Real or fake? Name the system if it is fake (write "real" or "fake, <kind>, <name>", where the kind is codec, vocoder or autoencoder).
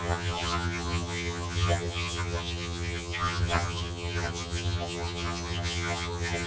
fake, vocoder, HiFi-GAN